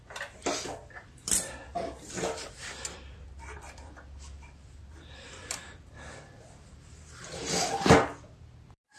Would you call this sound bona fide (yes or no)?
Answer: no